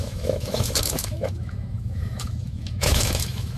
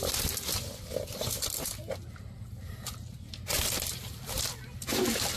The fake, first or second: first